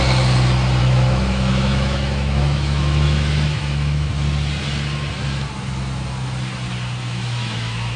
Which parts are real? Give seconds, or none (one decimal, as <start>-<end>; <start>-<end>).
0.0-0.8; 4.1-7.0